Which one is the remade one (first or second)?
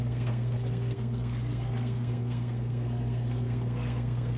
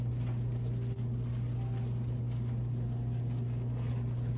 first